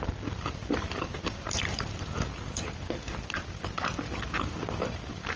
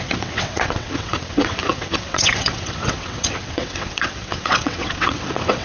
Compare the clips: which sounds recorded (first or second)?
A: first